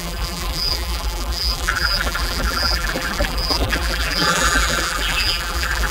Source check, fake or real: fake